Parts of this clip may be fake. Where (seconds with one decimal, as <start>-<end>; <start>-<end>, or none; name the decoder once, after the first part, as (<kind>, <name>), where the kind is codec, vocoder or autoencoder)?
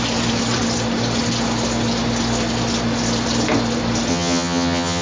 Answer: 4.1-5.0 (vocoder, HiFi-GAN)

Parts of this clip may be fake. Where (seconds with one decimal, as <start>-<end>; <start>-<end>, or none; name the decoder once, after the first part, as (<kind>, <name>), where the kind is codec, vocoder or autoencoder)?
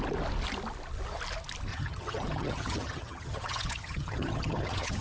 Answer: 1.7-5.0 (vocoder, HiFi-GAN)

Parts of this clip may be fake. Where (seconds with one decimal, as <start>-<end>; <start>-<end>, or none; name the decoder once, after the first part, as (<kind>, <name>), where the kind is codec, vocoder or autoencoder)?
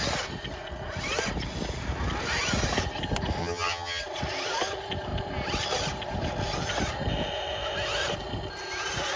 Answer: 3.4-4.0 (vocoder, HiFi-GAN)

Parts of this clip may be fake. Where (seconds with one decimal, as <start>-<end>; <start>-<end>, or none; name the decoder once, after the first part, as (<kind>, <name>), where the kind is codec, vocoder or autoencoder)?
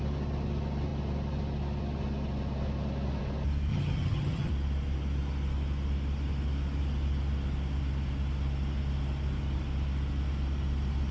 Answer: 3.7-4.5 (vocoder, HiFi-GAN)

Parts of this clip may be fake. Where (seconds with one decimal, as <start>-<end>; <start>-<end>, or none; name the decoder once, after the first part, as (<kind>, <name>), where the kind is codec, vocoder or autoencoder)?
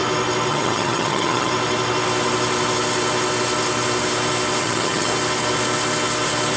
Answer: 0.5-1.5 (vocoder, HiFi-GAN); 4.6-5.1